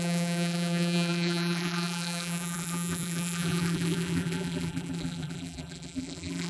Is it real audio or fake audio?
fake